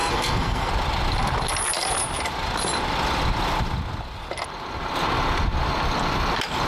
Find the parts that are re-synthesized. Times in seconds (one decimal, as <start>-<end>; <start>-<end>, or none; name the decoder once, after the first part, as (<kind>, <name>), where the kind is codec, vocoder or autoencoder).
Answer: 0.0-0.7 (codec, SNAC)